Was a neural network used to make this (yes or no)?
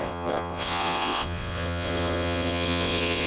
yes